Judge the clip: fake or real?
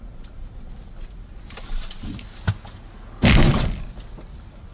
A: real